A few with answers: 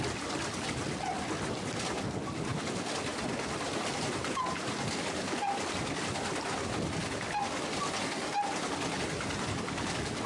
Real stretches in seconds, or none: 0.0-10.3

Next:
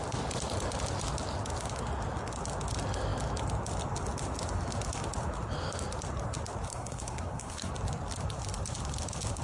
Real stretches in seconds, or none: 0.0-6.7; 7.7-9.4